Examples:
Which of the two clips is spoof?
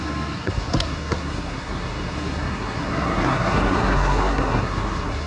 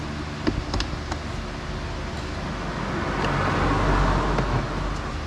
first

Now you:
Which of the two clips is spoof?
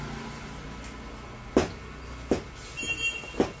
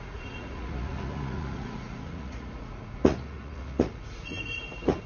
second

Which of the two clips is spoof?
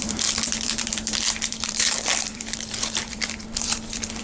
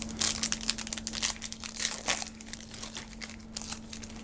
first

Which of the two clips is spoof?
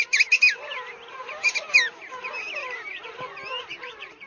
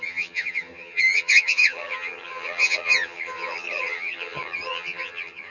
second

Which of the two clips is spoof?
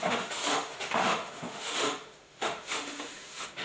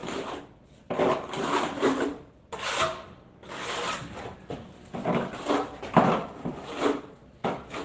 first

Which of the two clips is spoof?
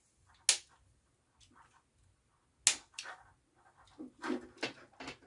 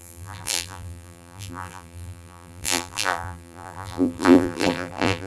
second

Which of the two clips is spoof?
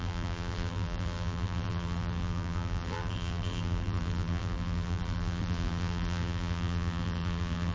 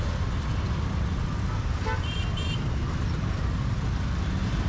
first